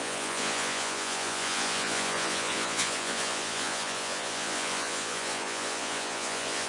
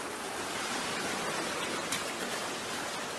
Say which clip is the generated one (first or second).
first